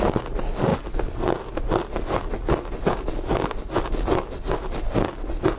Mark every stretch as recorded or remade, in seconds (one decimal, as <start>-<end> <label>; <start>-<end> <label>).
0.0-5.6 recorded